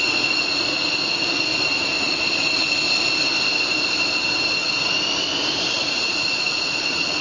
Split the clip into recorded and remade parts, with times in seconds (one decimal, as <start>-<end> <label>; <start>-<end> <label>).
0.0-1.5 remade; 1.5-2.0 recorded; 2.0-2.4 remade; 2.4-5.8 recorded; 5.8-7.2 remade